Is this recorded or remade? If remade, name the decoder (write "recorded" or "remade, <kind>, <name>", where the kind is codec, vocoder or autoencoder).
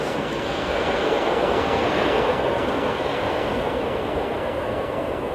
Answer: remade, codec, SNAC